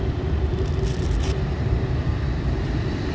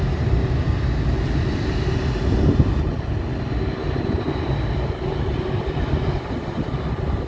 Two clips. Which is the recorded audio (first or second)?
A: second